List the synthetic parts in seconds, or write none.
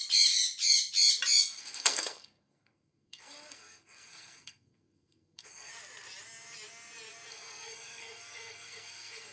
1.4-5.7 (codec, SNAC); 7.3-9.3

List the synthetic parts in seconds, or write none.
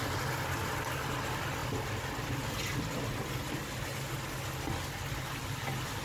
none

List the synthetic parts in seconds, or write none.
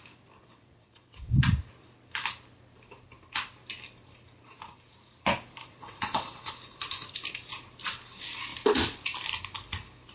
0.4-1.4 (vocoder, WaveNeXt); 5.6-6.5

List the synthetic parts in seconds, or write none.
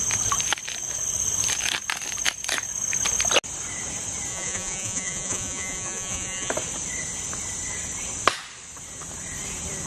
4.3-6.5 (vocoder, Vocos)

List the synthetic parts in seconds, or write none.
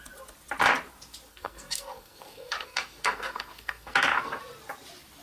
1.3-4.4 (codec, SNAC)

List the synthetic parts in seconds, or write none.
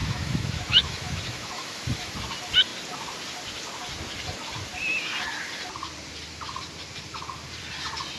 0.0-2.1 (autoencoder, DAC-VAE)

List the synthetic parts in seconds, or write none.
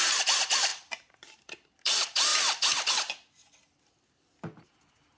0.7-1.9 (vocoder, BigVGAN v2)